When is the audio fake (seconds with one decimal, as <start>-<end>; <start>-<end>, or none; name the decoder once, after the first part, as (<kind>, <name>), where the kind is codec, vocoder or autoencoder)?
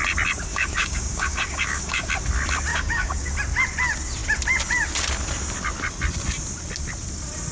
0.5-2.1 (codec, DAC); 2.7-3.3